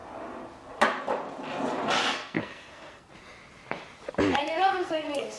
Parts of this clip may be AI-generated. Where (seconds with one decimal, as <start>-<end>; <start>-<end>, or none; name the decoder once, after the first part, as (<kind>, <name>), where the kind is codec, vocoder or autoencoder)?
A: 2.0-3.1 (codec, SNAC); 4.4-5.4